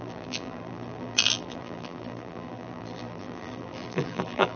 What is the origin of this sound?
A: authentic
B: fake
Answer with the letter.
B